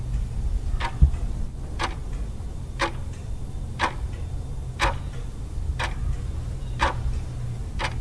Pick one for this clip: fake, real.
real